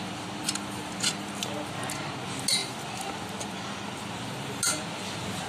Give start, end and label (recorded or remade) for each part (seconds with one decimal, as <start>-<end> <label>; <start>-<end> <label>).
0.0-5.5 recorded